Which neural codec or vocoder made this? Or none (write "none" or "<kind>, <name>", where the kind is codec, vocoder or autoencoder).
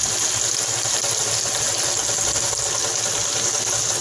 none